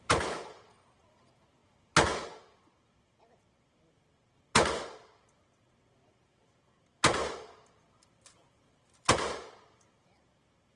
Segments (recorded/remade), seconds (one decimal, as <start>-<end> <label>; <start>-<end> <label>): 0.0-10.8 recorded